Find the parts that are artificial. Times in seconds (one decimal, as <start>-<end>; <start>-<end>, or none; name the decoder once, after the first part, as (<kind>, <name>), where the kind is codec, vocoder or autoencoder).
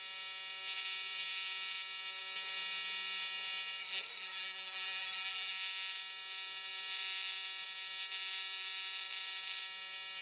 3.8-5.5 (codec, SNAC)